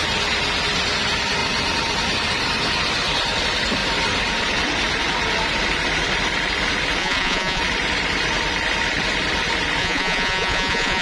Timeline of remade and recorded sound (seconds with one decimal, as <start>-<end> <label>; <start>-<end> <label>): 0.0-7.0 recorded; 7.0-7.6 remade; 7.6-9.8 recorded; 9.8-11.0 remade